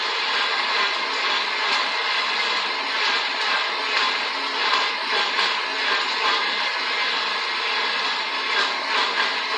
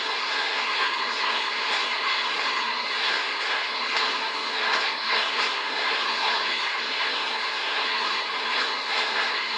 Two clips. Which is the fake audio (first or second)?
second